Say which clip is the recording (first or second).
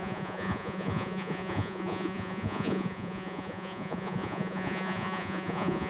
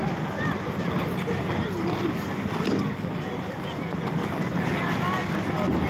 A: second